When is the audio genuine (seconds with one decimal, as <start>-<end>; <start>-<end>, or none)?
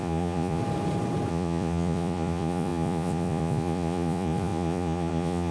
0.6-1.3